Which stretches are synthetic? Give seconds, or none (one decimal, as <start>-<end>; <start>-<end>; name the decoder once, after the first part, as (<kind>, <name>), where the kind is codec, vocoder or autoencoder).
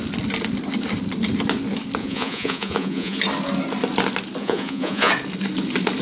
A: 2.0-3.2 (vocoder, Vocos); 4.4-5.1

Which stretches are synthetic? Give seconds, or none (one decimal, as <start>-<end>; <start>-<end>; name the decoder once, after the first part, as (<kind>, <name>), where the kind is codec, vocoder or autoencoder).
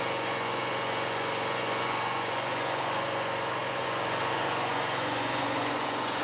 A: 0.0-6.2 (vocoder, Vocos)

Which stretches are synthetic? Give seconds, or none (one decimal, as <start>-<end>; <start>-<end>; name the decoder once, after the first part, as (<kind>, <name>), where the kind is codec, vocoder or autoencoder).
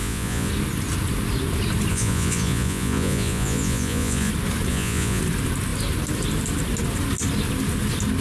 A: 0.0-0.5 (vocoder, Vocos); 1.9-4.3; 4.7-5.2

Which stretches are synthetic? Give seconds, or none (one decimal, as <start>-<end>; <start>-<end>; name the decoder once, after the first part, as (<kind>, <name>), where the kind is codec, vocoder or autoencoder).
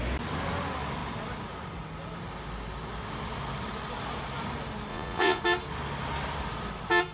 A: 4.9-5.4 (vocoder, Vocos)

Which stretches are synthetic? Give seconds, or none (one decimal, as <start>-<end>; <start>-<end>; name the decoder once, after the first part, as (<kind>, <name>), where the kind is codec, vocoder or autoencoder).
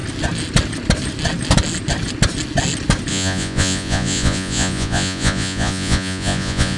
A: 3.1-6.8 (vocoder, Vocos)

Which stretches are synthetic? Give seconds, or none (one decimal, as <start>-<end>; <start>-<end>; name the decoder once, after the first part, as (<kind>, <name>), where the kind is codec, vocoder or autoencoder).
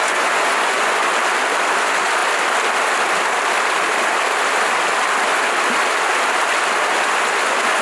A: 0.0-1.1 (vocoder, Vocos); 1.8-2.2; 6.9-7.8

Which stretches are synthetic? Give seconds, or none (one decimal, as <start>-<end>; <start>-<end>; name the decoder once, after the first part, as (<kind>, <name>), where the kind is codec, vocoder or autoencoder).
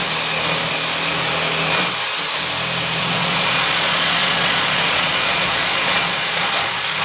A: 3.0-7.0 (vocoder, Vocos)